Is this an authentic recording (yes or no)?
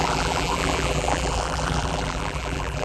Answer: no